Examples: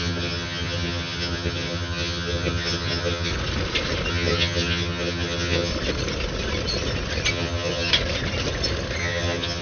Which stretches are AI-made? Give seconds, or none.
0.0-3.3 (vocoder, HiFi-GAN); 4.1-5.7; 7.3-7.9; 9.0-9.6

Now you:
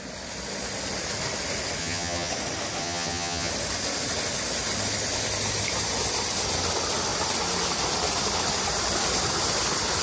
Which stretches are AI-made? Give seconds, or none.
1.8-2.3 (vocoder, HiFi-GAN); 2.8-3.5

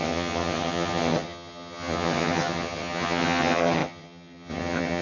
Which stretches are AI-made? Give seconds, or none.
0.0-5.0 (vocoder, HiFi-GAN)